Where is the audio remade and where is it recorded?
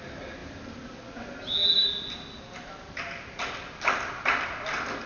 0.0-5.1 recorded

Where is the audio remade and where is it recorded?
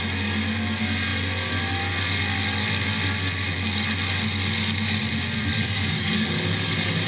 0.0-5.5 recorded; 5.5-7.1 remade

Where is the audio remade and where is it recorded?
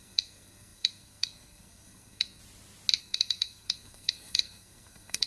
0.0-2.4 remade; 2.4-3.0 recorded; 3.0-5.3 remade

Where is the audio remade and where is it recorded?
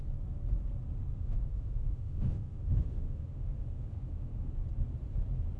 0.0-1.1 recorded; 1.1-4.5 remade; 4.5-5.6 recorded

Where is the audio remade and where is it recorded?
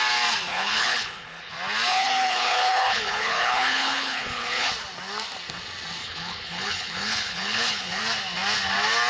0.0-0.5 recorded; 0.5-1.5 remade; 1.5-1.9 recorded; 1.9-4.7 remade; 4.7-6.0 recorded; 6.0-8.0 remade; 8.0-9.1 recorded